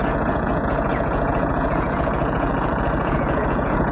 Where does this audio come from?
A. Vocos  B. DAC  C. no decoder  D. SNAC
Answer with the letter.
A